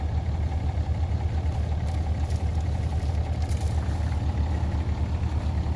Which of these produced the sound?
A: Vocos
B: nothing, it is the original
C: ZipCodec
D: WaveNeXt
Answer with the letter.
B